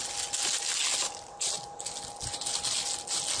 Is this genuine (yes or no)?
yes